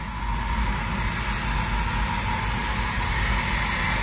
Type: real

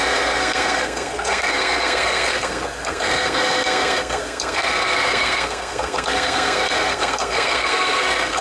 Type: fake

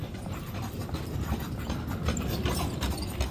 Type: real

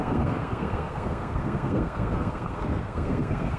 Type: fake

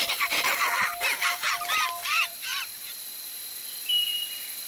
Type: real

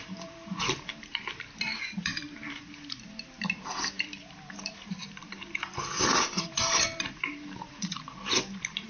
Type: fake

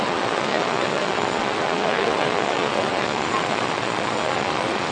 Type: fake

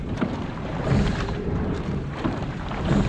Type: fake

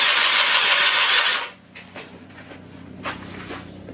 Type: fake